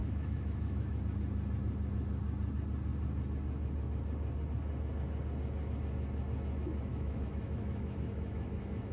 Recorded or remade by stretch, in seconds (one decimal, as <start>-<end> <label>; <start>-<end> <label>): 0.0-1.0 remade; 1.0-6.9 recorded; 6.9-8.9 remade

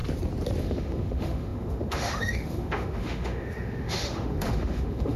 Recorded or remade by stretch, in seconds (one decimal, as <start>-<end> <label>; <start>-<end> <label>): 0.0-0.6 recorded; 0.6-5.2 remade